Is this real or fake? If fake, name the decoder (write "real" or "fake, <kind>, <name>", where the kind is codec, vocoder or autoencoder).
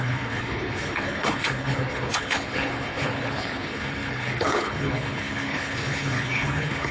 fake, codec, HILCodec